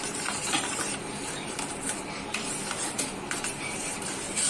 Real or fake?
fake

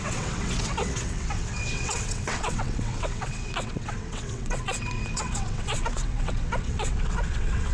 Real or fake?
fake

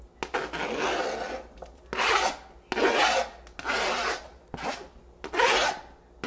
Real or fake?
real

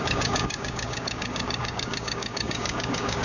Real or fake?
fake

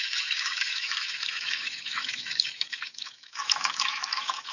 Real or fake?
fake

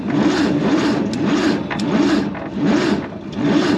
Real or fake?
real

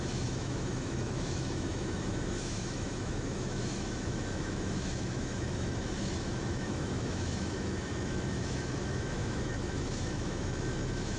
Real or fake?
fake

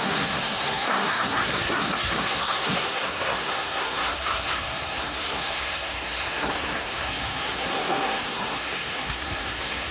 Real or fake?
fake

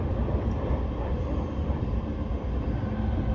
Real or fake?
fake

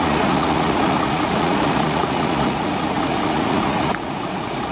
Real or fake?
fake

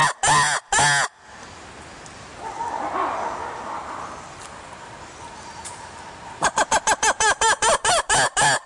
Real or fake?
real